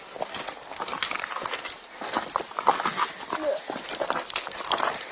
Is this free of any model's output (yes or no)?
yes